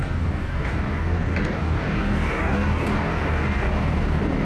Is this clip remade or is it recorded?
remade